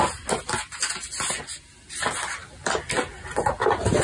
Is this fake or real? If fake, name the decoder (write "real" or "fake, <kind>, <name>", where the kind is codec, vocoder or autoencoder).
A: real